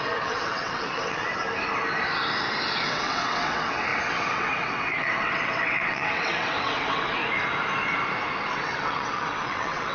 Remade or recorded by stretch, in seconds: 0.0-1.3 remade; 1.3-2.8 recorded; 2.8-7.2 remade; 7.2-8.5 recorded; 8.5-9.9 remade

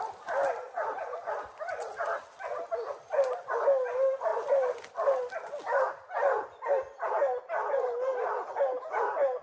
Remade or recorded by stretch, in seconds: 0.0-9.4 recorded